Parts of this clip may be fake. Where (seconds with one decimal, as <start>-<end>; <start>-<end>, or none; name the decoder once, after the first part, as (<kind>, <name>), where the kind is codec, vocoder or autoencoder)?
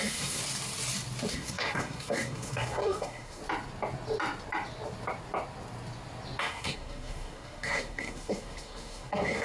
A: 0.0-0.4 (codec, SNAC); 1.3-3.4; 6.4-9.4